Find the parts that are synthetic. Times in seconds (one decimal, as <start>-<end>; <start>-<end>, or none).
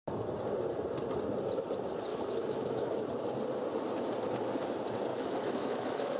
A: 2.1-3.1; 5.1-6.2